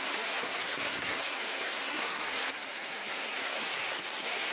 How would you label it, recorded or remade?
remade